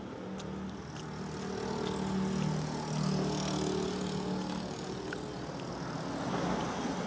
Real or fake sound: real